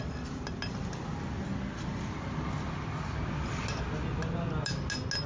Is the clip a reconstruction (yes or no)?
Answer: no